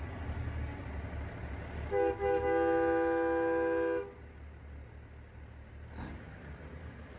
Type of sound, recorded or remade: recorded